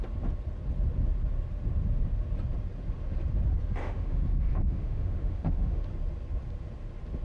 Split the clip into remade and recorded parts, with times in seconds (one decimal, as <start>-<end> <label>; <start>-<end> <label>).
0.0-3.8 recorded; 3.8-5.8 remade; 5.8-7.2 recorded